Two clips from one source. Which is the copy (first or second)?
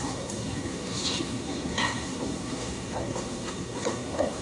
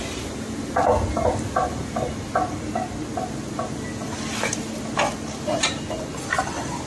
first